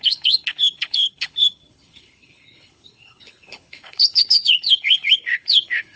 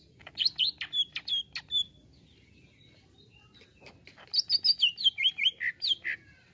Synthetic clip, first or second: first